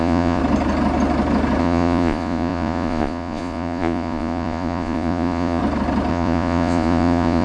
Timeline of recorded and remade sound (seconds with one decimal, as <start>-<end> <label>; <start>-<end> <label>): 0.0-0.4 remade; 0.4-1.6 recorded; 1.6-5.6 remade; 5.6-6.1 recorded; 6.1-7.4 remade